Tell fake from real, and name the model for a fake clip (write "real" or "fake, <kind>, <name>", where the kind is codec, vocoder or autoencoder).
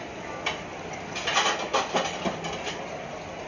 real